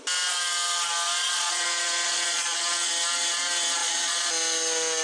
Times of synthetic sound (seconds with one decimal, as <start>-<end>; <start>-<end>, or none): 1.2-2.9; 3.8-4.3